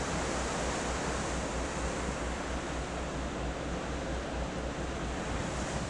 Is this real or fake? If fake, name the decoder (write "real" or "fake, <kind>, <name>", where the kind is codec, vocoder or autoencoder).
real